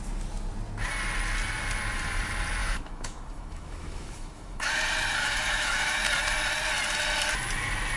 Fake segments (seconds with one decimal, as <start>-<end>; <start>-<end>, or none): 2.6-4.7; 5.2-6.0